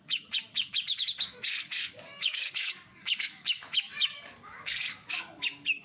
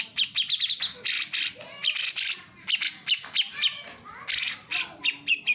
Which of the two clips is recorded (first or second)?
second